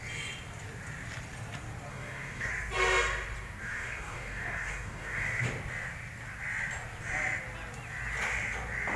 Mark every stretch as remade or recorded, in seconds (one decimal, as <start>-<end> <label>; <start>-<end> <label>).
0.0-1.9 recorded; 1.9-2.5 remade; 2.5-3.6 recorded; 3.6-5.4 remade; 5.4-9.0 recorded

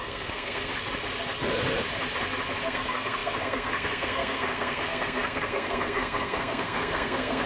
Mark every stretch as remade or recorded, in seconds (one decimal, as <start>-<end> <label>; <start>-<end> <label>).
0.0-0.7 remade; 0.7-2.6 recorded; 2.6-7.5 remade

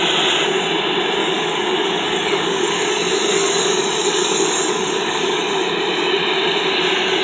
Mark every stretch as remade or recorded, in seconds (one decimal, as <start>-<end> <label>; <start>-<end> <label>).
0.0-1.2 recorded; 1.2-5.5 remade; 5.5-7.2 recorded

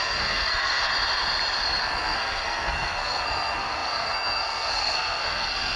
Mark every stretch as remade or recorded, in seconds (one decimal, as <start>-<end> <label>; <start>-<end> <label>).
0.0-0.9 remade; 0.9-1.8 recorded; 1.8-5.8 remade